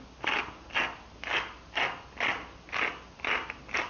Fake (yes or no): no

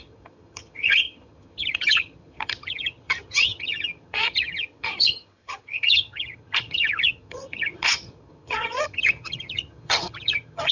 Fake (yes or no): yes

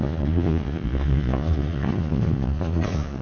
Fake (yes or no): yes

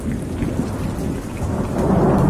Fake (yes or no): no